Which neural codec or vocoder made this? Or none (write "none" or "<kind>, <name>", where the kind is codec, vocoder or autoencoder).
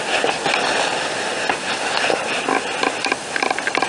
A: vocoder, BigVGAN v2